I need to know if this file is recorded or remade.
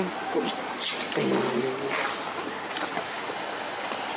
recorded